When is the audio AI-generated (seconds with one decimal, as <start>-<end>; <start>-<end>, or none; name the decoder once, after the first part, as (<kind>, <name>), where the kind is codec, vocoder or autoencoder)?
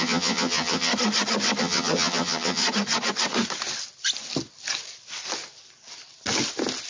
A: 0.0-0.9 (vocoder, HiFi-GAN); 1.6-2.6